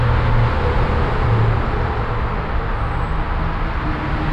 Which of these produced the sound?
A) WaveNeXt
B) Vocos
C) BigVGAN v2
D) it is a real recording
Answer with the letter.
D